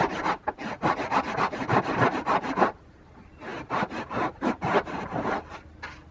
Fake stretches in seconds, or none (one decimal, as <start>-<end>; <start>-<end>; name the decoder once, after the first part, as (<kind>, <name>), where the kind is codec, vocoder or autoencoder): none